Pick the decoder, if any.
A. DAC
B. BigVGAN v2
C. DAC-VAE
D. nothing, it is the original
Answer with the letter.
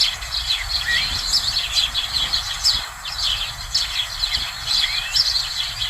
D